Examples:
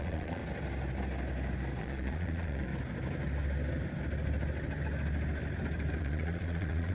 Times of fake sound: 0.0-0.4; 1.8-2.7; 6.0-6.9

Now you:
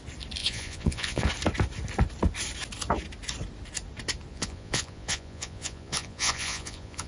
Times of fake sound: 0.4-1.3; 4.3-7.1

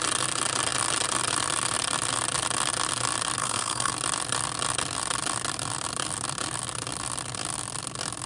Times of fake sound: 3.4-3.9

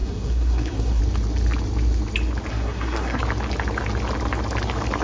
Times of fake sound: 0.0-1.0; 2.5-3.2

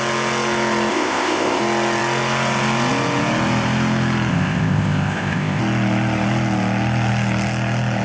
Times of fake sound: 0.9-1.6; 4.3-5.6

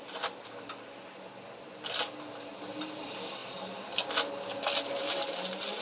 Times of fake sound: none